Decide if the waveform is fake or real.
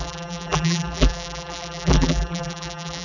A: fake